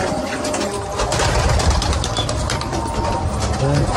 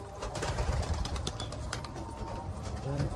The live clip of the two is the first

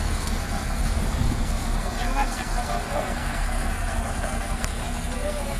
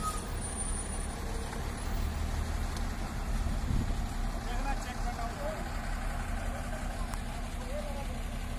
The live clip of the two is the second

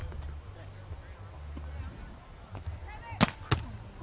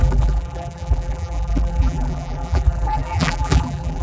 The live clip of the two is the first